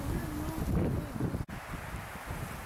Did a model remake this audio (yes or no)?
no